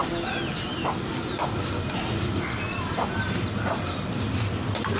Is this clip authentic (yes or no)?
yes